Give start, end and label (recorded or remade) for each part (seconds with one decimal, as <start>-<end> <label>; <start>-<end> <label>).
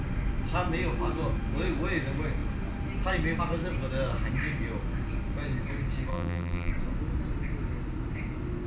0.0-6.1 recorded; 6.1-6.7 remade; 6.7-8.7 recorded